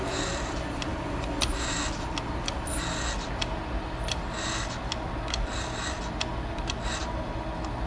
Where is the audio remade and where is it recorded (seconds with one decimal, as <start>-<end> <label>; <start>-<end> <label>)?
0.0-7.9 recorded